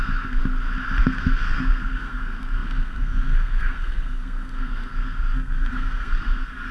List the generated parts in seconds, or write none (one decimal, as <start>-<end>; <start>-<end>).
0.0-0.4; 1.0-6.7